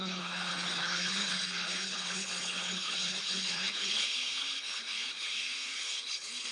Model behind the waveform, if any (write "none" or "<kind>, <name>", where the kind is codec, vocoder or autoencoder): codec, HILCodec